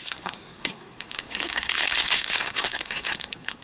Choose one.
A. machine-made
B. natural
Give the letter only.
A